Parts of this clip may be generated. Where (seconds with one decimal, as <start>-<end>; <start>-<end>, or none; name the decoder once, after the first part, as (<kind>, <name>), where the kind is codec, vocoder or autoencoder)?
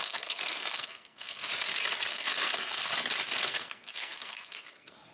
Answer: 0.0-1.5 (codec, SNAC); 2.1-2.8; 3.4-5.1